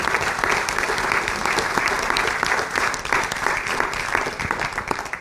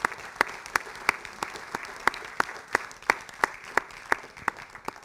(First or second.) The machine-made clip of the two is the first